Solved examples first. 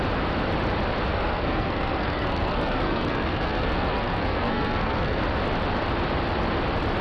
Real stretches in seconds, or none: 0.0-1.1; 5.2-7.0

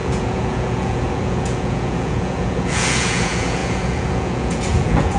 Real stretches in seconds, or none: none

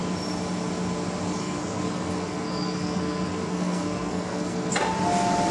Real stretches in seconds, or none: 0.0-1.4; 4.7-5.5

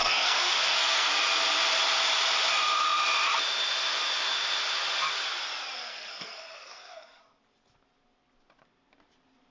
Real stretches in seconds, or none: 1.1-5.8; 7.2-9.5

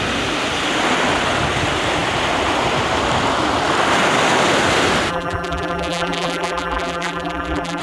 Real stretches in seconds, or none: 0.0-5.1

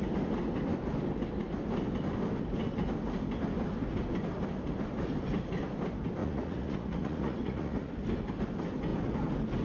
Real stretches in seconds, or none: 0.0-6.2; 7.9-9.6

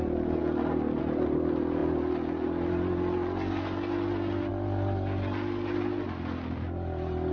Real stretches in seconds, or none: 0.0-7.3